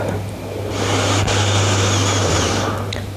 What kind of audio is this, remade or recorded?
recorded